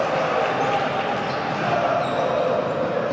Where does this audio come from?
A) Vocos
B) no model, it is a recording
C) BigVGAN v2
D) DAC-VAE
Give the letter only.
B